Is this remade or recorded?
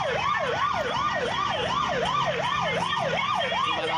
recorded